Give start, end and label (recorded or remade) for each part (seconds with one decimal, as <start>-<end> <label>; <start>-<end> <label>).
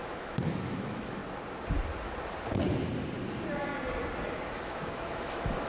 0.0-1.2 remade; 1.2-4.6 recorded; 4.6-5.7 remade